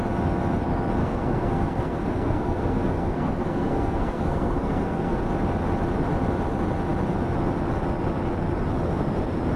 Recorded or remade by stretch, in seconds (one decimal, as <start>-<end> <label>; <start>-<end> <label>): 0.0-1.0 recorded; 1.0-5.2 remade; 5.2-9.6 recorded

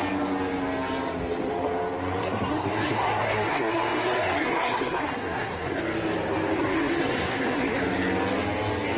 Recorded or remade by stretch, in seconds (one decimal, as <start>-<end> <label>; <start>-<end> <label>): 0.0-2.2 recorded; 2.2-5.8 remade; 5.8-6.6 recorded; 6.6-7.8 remade; 7.8-9.0 recorded